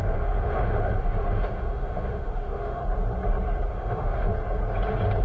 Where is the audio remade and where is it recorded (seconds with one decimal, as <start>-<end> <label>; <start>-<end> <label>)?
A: 0.0-2.8 remade; 2.8-3.7 recorded; 3.7-4.3 remade; 4.3-5.2 recorded